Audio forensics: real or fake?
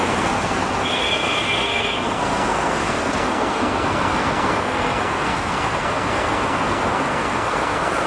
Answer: fake